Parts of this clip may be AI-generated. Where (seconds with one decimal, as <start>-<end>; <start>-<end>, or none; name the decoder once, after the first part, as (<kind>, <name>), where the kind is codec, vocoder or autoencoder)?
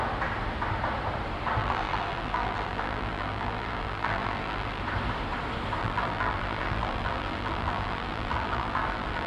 1.6-4.8 (vocoder, BigVGAN v2); 5.8-9.3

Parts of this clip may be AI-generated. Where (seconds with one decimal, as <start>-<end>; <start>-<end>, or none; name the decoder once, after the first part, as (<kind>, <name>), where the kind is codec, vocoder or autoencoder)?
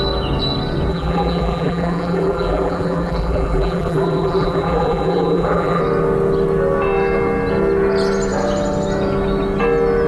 0.9-5.8 (vocoder, BigVGAN v2)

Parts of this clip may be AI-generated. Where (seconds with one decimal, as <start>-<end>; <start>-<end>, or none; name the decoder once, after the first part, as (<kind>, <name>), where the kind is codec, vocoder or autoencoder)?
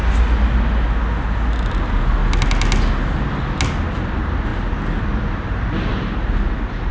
1.7-2.2 (vocoder, BigVGAN v2); 4.0-4.5; 5.0-6.9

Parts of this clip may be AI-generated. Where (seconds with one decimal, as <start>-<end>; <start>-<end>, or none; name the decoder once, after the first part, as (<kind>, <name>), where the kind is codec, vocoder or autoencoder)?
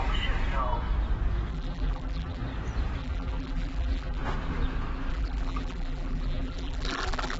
1.5-2.4 (vocoder, BigVGAN v2); 3.0-4.2; 5.1-7.4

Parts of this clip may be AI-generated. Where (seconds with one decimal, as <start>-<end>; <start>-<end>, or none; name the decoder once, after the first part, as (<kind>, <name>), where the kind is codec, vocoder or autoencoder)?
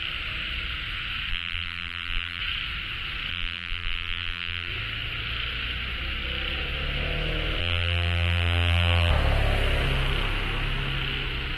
1.3-2.4 (vocoder, BigVGAN v2); 3.3-4.7; 7.6-9.1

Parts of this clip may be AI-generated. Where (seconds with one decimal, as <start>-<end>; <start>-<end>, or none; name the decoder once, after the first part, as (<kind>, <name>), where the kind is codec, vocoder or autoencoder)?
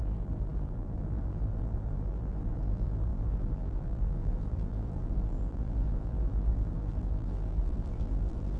0.0-8.6 (vocoder, BigVGAN v2)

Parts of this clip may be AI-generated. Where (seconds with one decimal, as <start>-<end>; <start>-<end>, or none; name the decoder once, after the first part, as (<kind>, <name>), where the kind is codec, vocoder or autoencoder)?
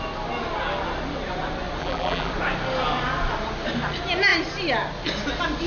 1.8-2.3 (vocoder, BigVGAN v2)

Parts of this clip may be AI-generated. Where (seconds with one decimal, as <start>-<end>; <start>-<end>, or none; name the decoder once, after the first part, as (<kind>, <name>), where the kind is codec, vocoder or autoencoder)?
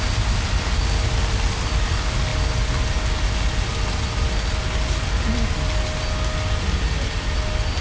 none